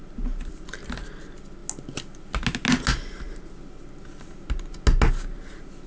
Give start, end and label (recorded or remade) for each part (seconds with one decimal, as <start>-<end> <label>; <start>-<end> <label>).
0.0-5.9 recorded